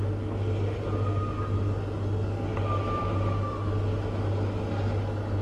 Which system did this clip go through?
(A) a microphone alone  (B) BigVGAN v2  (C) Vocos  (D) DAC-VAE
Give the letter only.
A